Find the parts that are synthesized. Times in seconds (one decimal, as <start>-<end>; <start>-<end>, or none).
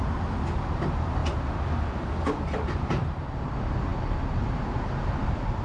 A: 0.0-1.2; 2.3-5.6